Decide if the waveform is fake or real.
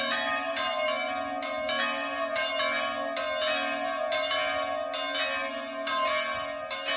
real